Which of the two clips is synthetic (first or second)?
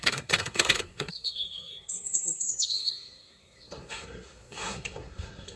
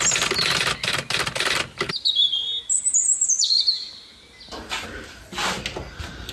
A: first